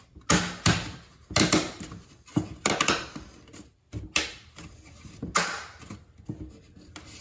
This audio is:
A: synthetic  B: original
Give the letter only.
B